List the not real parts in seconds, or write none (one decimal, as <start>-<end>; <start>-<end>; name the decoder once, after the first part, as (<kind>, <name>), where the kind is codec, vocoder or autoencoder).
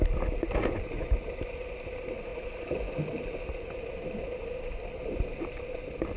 none